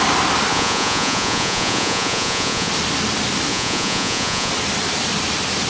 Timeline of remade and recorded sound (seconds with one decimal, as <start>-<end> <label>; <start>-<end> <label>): 0.0-0.5 recorded; 0.5-2.7 remade; 2.7-3.5 recorded; 3.5-4.5 remade; 4.5-5.7 recorded